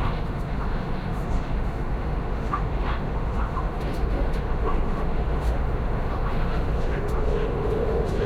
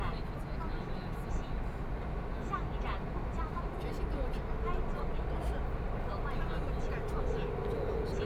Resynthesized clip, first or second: first